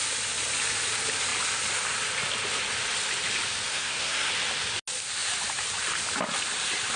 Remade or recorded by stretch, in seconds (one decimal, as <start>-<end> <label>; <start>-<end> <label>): 0.0-3.7 recorded; 3.7-4.3 remade; 4.3-7.0 recorded